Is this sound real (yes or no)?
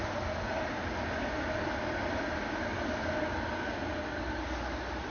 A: yes